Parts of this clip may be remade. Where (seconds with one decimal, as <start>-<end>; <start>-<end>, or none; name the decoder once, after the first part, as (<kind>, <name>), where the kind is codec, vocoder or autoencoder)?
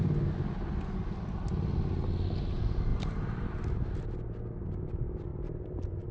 2.9-4.0 (vocoder, BigVGAN v2); 5.3-6.1